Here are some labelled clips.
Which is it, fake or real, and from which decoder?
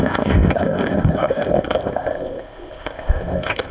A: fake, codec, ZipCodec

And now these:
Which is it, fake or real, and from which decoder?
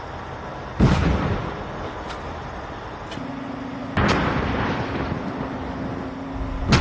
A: real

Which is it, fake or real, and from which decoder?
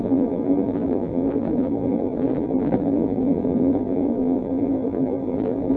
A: fake, vocoder, BigVGAN v2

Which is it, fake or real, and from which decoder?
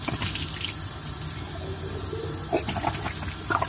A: real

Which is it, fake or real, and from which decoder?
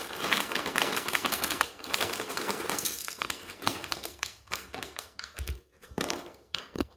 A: fake, codec, SNAC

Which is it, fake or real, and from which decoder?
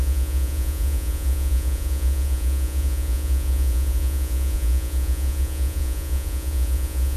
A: fake, vocoder, Vocos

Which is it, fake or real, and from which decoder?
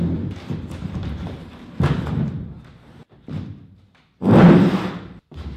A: fake, vocoder, BigVGAN v2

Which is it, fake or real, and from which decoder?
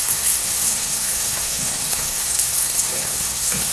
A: fake, codec, SNAC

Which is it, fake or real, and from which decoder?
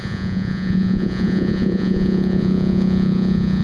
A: fake, vocoder, Vocos